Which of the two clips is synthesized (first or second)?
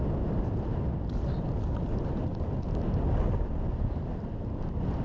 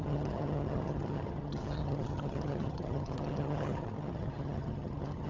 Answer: second